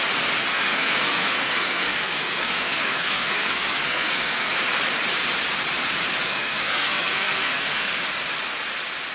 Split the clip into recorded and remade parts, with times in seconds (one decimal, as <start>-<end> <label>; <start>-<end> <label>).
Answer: 0.0-0.4 recorded; 0.4-4.5 remade; 4.5-6.2 recorded; 6.2-8.0 remade; 8.0-9.1 recorded